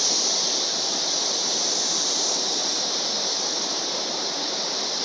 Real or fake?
real